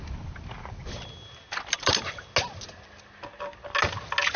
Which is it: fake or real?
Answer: real